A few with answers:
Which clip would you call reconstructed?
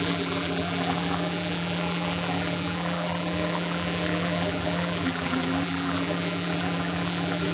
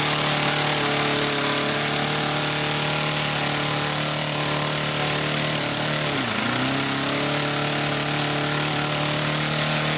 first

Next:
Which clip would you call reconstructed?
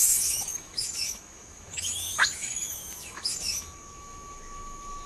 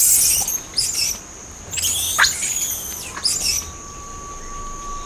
first